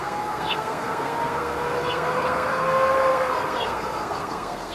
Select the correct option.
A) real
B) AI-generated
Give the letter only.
B